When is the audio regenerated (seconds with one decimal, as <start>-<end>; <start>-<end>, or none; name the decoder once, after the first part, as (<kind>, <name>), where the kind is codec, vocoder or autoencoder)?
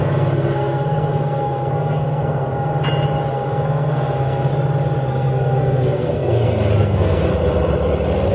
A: 0.0-2.7 (codec, SNAC); 3.3-4.5; 5.1-7.3